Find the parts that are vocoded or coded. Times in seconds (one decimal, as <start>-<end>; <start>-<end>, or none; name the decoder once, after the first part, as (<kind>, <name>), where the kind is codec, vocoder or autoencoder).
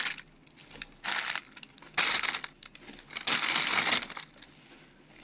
none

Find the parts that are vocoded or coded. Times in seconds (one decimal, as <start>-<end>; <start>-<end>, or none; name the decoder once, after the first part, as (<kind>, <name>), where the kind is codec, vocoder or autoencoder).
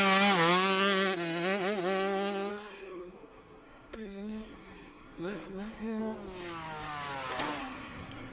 2.5-6.0 (codec, SNAC); 7.6-8.3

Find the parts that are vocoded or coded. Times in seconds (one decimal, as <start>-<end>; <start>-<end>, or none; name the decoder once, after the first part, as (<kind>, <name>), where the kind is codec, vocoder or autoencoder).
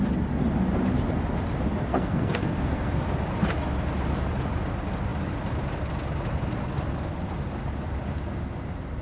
1.9-2.9 (codec, SNAC)